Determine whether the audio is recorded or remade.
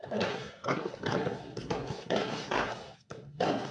remade